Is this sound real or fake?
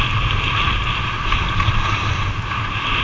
real